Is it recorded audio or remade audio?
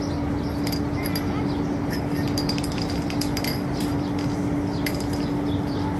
remade